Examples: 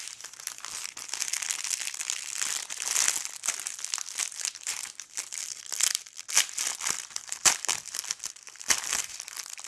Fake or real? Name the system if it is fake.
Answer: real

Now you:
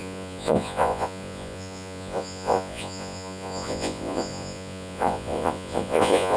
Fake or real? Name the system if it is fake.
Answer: fake, vocoder, Vocos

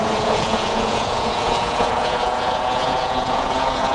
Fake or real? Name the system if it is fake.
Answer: fake, vocoder, Vocos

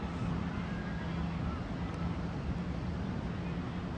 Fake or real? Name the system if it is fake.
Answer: real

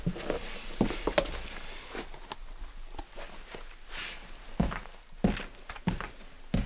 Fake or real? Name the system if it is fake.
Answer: real